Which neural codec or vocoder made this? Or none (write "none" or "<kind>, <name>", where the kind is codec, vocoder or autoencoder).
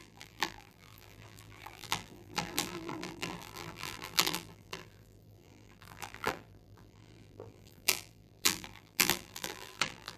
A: vocoder, BigVGAN v2